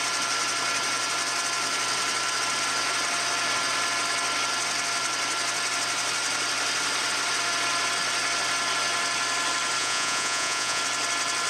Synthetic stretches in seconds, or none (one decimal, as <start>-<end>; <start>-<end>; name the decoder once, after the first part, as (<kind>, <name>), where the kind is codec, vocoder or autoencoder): 9.8-10.8 (vocoder, Vocos)